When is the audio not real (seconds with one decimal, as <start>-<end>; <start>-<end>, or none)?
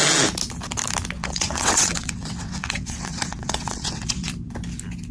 1.2-4.3